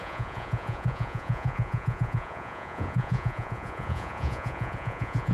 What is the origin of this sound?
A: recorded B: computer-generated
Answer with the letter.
B